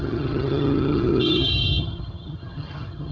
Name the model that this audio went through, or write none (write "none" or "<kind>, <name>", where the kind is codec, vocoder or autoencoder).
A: vocoder, HiFi-GAN